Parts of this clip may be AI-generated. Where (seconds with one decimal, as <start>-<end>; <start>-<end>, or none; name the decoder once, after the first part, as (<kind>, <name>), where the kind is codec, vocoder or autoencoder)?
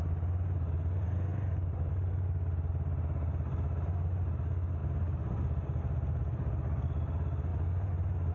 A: none